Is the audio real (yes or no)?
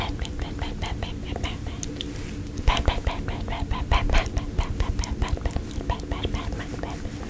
yes